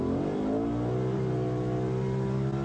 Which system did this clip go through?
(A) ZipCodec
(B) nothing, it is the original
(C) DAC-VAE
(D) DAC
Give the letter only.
B